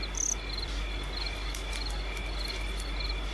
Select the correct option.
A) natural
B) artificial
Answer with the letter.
A